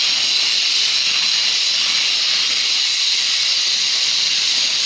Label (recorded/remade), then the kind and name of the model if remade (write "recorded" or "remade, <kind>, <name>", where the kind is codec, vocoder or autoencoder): recorded